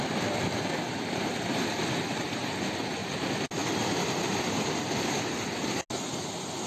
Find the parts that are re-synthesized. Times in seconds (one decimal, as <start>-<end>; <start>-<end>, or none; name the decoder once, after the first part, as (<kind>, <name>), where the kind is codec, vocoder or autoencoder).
none